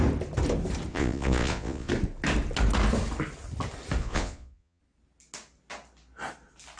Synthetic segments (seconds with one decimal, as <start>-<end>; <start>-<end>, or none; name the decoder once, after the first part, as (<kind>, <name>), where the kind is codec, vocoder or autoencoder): 0.9-1.9 (vocoder, Vocos); 4.0-4.8